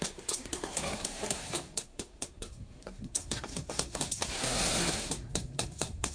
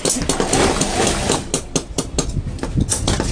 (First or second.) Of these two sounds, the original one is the second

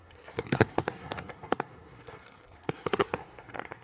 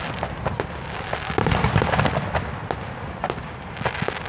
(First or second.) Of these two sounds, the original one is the second